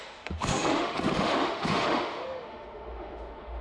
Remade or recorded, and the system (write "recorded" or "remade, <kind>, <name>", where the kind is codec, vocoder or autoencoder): remade, autoencoder, DAC-VAE